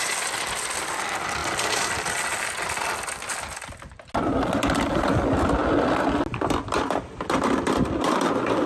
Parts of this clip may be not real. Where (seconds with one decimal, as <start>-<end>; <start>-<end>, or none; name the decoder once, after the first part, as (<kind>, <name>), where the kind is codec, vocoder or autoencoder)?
none